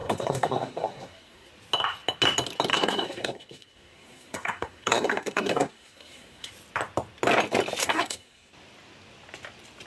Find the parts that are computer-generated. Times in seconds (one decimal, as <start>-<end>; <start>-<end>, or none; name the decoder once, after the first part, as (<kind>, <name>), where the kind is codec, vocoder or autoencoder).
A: 0.0-1.5 (codec, SNAC); 2.7-6.5; 7.8-8.5